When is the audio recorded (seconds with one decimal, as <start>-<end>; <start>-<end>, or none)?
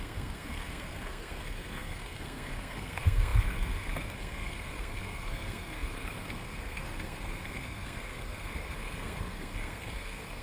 none